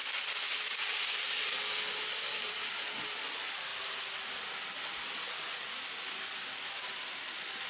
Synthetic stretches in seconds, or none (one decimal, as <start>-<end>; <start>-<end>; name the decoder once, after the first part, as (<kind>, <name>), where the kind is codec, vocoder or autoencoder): 3.2-3.7 (vocoder, BigVGAN v2); 6.5-7.7